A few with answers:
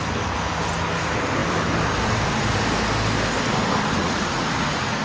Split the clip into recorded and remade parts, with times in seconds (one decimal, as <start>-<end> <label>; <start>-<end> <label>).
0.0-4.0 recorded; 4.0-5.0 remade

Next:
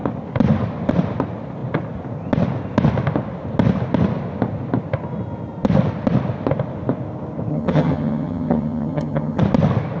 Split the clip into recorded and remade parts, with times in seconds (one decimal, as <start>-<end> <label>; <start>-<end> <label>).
0.0-7.5 recorded; 7.5-9.4 remade; 9.4-10.0 recorded

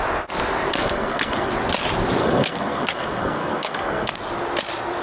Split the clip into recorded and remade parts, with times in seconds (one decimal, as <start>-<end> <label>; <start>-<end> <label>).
0.0-0.7 recorded; 0.7-1.5 remade; 1.5-2.2 recorded; 2.2-4.1 remade; 4.1-5.0 recorded

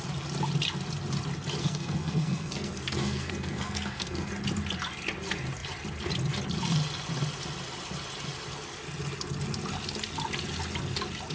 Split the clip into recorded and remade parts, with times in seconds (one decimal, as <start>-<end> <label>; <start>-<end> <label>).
0.0-1.6 recorded; 1.6-4.3 remade; 4.3-11.3 recorded

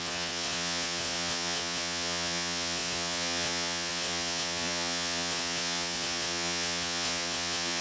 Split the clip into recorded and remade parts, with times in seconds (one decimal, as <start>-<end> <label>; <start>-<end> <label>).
0.0-7.8 remade

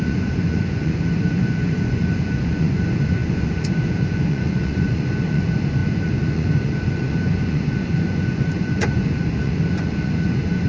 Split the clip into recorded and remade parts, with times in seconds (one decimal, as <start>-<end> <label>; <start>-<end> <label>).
0.0-10.7 remade

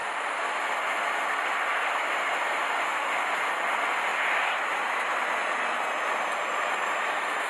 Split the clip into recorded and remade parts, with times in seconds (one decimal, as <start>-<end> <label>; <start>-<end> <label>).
0.0-2.8 recorded; 2.8-3.3 remade; 3.3-7.5 recorded